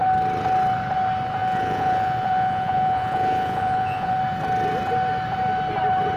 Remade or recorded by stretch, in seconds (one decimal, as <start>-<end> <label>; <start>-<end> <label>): 0.0-1.4 recorded; 1.4-4.2 remade; 4.2-6.2 recorded